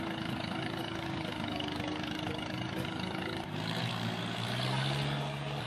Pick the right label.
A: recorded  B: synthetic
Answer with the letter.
B